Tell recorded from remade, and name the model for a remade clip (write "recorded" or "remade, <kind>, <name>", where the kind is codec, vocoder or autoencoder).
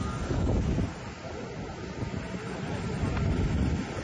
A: recorded